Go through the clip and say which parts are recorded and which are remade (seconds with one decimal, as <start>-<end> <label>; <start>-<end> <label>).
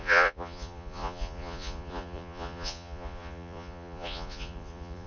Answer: 0.0-5.1 remade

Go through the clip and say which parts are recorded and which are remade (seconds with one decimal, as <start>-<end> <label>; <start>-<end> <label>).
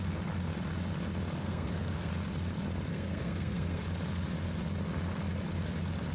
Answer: 0.0-1.4 recorded; 1.4-2.1 remade; 2.1-2.9 recorded; 2.9-3.8 remade; 3.8-6.1 recorded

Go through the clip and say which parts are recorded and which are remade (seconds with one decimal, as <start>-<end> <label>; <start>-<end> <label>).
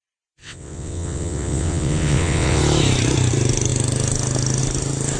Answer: 0.0-0.4 recorded; 0.4-2.6 remade; 2.6-5.2 recorded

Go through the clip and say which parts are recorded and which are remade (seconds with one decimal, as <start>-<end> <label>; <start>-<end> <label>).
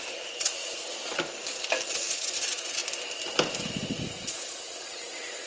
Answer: 0.0-0.6 remade; 0.6-1.9 recorded; 1.9-2.8 remade; 2.8-4.2 recorded; 4.2-5.5 remade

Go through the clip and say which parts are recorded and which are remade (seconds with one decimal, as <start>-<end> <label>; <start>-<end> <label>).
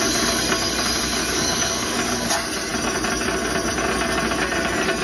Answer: 0.0-1.2 recorded; 1.2-2.3 remade; 2.3-5.0 recorded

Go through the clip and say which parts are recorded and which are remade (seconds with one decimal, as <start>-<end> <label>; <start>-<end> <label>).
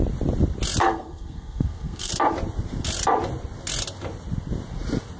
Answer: 0.0-0.8 recorded; 0.8-2.1 remade; 2.1-5.2 recorded